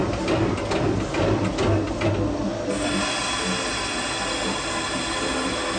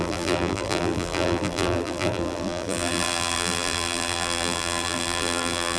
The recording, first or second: first